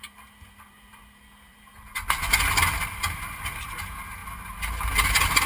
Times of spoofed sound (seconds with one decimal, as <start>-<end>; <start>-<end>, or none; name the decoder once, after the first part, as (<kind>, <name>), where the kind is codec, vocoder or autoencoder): 0.0-1.7 (vocoder, BigVGAN v2); 3.1-4.2; 5.1-5.5